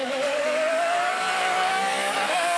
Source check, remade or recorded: remade